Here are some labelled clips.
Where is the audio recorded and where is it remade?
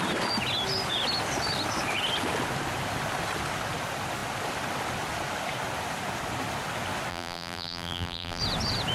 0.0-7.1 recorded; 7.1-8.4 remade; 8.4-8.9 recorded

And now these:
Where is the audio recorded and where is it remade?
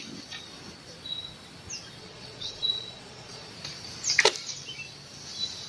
0.0-2.0 recorded; 2.0-3.5 remade; 3.5-5.7 recorded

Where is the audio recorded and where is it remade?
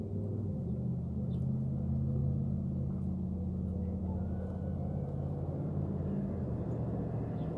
0.0-7.6 recorded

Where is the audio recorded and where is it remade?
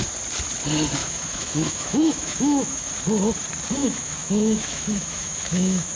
0.0-1.0 recorded; 1.0-2.9 remade; 2.9-3.8 recorded; 3.8-6.0 remade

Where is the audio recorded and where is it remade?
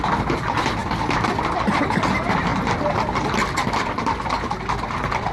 0.0-5.3 recorded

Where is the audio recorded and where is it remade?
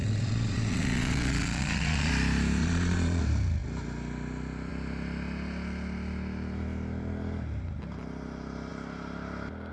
0.0-2.1 remade; 2.1-2.6 recorded; 2.6-3.2 remade; 3.2-9.7 recorded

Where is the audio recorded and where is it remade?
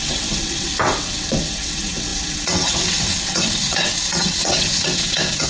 0.0-5.5 remade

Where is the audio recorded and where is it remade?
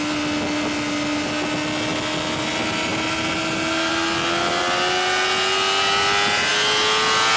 0.0-2.9 recorded; 2.9-3.9 remade; 3.9-7.4 recorded